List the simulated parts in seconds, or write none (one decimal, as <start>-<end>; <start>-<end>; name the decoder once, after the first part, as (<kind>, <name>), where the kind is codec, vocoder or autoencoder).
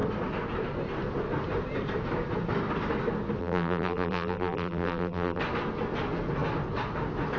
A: 3.4-5.4 (vocoder, BigVGAN v2)